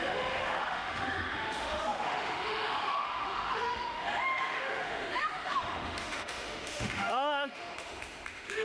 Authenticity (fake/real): fake